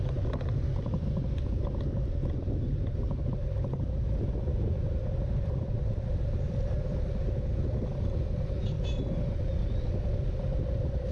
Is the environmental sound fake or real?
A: real